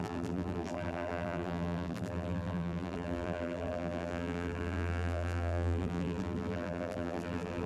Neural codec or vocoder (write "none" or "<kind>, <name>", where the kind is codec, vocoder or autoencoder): vocoder, BigVGAN v2